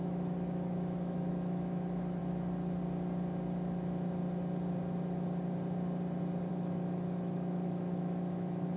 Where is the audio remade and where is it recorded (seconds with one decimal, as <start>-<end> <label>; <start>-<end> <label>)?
0.0-2.2 remade; 2.2-6.5 recorded; 6.5-8.8 remade